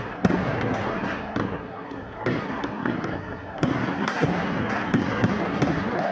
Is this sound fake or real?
fake